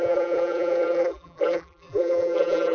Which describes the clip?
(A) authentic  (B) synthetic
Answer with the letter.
B